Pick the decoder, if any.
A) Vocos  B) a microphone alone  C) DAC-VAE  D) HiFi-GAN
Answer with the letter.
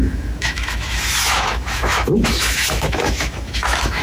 C